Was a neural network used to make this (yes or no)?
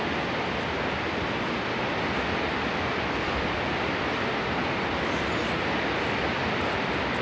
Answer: no